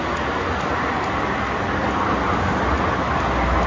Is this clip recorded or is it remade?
recorded